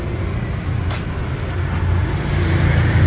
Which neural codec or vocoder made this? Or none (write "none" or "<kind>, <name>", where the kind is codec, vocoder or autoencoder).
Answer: none